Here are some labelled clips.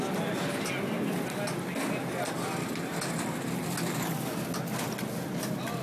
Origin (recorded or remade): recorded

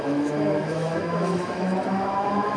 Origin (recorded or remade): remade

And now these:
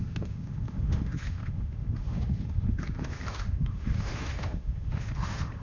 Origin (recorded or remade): remade